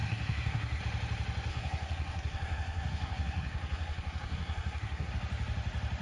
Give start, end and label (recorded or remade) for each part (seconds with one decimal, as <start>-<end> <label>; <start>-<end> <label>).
0.0-0.8 remade; 0.8-1.5 recorded; 1.5-5.1 remade; 5.1-6.0 recorded